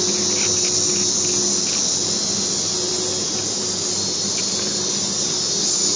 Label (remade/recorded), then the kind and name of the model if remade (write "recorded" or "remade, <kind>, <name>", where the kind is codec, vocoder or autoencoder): recorded